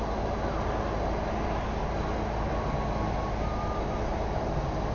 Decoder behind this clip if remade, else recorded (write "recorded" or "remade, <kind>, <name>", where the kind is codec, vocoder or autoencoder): recorded